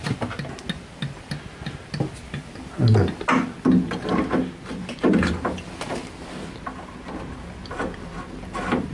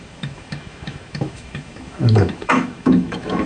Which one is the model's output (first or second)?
second